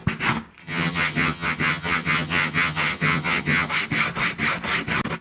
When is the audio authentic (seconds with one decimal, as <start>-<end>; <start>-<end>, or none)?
0.0-0.6; 3.7-5.2